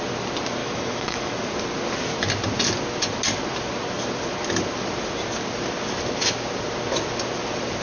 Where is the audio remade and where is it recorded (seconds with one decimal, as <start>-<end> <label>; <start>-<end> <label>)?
0.0-0.6 recorded; 0.6-1.3 remade; 1.3-7.8 recorded